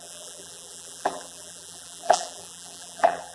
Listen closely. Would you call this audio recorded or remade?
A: remade